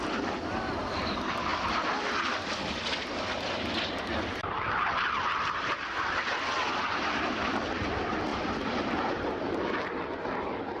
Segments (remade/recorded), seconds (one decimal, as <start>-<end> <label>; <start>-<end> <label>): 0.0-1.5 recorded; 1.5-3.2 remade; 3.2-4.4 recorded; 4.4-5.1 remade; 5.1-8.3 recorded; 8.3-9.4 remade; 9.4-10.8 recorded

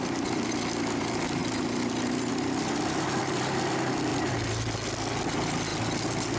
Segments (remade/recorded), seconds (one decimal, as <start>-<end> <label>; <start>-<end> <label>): 0.0-1.4 remade; 1.4-2.3 recorded; 2.3-4.1 remade; 4.1-5.1 recorded; 5.1-5.7 remade; 5.7-6.4 recorded

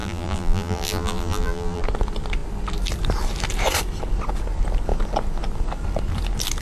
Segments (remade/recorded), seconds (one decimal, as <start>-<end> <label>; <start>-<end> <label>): 0.0-1.8 remade; 1.8-6.6 recorded